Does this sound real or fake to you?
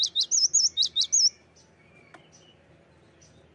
real